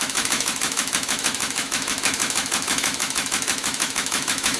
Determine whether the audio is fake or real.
fake